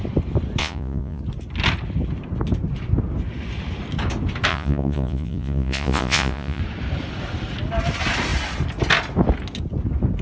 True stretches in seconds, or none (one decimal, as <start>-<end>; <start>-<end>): 0.0-0.6; 1.2-4.5; 6.6-10.2